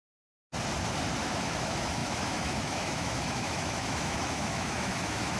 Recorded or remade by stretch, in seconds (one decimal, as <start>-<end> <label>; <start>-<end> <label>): 0.0-1.2 recorded; 1.2-5.4 remade